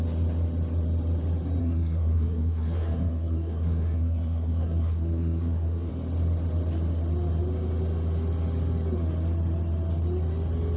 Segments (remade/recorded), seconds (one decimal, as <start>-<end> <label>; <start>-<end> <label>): 0.0-1.6 recorded; 1.6-5.9 remade; 5.9-10.8 recorded